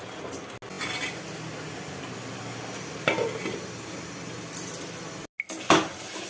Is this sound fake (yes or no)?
no